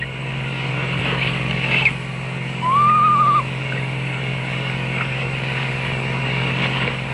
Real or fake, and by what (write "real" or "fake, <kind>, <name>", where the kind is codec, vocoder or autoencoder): fake, codec, DAC